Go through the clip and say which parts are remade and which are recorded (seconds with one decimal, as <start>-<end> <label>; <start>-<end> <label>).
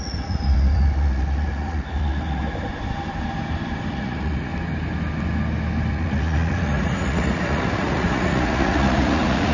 0.0-2.4 remade; 2.4-3.9 recorded; 3.9-4.5 remade; 4.5-5.9 recorded; 5.9-9.5 remade